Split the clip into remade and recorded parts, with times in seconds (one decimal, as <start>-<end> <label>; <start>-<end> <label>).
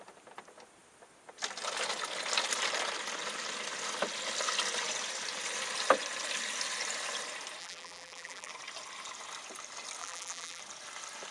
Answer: 0.0-7.6 recorded; 7.6-8.5 remade; 8.5-10.0 recorded; 10.0-10.6 remade; 10.6-11.3 recorded